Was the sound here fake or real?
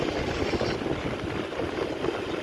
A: real